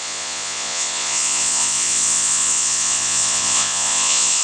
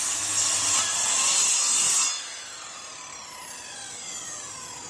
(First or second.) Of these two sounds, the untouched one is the second